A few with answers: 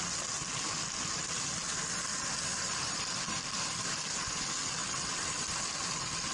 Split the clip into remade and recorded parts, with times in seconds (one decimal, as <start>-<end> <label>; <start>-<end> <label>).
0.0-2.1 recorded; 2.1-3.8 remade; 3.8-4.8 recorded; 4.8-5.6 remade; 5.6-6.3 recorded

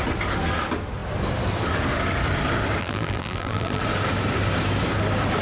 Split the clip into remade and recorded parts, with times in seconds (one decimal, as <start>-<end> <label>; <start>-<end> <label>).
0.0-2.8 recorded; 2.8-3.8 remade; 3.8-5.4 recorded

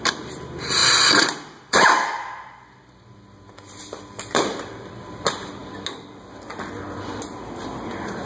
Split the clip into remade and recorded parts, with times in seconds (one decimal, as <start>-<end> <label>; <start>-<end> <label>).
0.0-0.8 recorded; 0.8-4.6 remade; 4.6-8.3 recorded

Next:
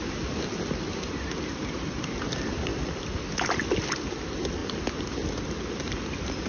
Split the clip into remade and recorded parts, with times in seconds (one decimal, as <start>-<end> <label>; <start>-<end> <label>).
0.0-6.5 recorded